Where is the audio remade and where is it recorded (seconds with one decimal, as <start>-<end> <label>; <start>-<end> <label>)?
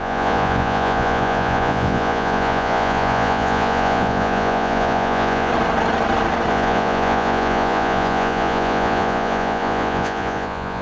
0.0-5.5 remade; 5.5-6.5 recorded; 6.5-10.8 remade